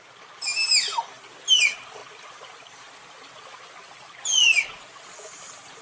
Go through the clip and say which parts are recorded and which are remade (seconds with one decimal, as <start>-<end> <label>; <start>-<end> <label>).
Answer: 0.0-5.8 recorded